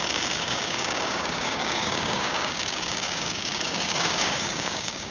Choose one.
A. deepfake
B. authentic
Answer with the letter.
A